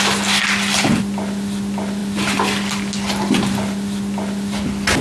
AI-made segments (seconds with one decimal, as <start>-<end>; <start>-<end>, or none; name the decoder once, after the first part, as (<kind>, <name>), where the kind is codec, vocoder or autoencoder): none